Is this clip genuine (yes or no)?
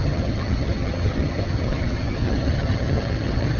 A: no